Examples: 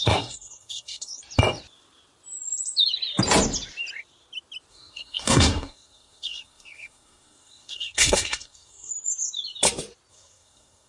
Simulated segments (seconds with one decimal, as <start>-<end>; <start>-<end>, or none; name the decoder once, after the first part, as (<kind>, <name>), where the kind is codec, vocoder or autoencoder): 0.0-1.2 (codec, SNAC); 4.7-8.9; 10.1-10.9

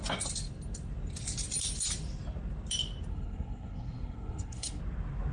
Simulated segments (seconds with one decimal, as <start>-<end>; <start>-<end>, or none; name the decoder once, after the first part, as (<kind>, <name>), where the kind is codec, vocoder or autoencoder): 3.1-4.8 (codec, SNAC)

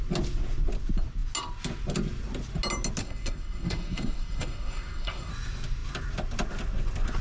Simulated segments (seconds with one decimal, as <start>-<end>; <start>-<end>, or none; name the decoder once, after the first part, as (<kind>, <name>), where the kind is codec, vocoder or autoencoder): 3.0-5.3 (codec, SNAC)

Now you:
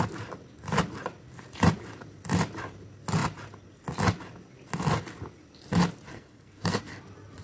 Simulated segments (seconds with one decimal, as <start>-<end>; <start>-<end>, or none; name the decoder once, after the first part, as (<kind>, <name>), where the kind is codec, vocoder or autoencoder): 6.1-6.8 (codec, SNAC)

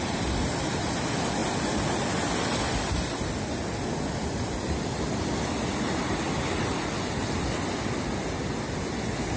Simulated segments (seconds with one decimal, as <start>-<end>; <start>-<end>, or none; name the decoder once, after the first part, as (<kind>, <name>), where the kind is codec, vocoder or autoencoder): none

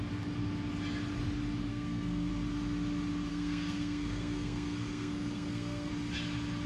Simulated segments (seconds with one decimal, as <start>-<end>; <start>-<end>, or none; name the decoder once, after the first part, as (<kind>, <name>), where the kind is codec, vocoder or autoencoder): 1.7-2.3 (codec, SNAC); 3.3-5.9